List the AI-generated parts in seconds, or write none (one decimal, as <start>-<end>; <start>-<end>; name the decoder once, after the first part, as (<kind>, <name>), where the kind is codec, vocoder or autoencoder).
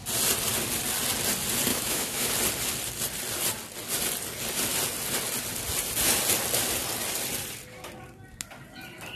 1.7-2.3 (autoencoder, DAC-VAE)